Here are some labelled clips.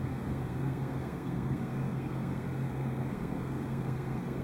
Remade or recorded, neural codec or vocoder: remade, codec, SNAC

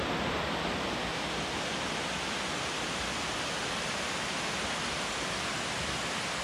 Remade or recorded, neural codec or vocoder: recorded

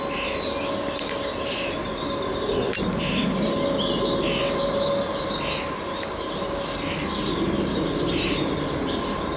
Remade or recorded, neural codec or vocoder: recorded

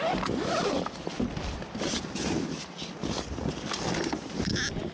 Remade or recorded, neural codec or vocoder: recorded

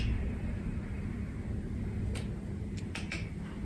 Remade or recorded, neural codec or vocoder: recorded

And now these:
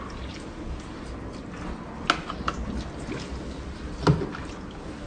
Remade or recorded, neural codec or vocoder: recorded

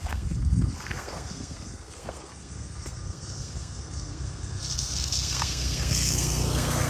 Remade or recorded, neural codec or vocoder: remade, codec, SNAC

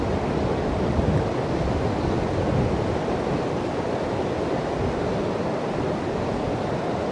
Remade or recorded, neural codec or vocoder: recorded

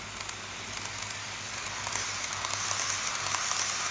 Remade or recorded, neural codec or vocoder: recorded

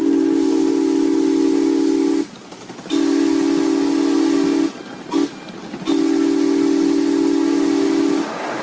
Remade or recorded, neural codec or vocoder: recorded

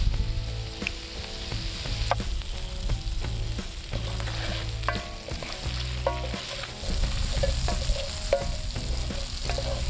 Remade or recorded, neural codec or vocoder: recorded